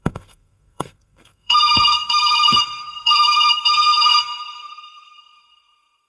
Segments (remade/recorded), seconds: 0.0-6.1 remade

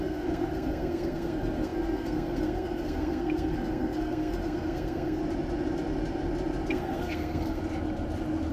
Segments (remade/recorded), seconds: 0.0-5.2 remade; 5.2-6.7 recorded; 6.7-7.6 remade; 7.6-8.5 recorded